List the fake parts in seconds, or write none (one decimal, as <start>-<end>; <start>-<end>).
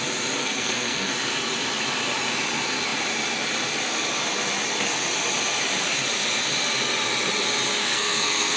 0.4-1.1; 7.8-8.6